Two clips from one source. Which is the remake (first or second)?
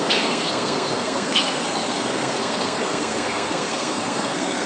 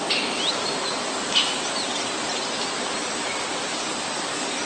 first